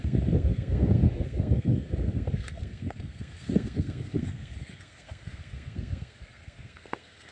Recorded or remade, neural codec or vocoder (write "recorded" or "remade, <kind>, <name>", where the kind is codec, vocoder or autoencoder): remade, codec, SNAC